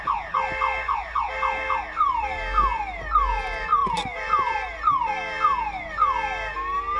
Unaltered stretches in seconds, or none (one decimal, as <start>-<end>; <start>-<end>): 0.0-7.0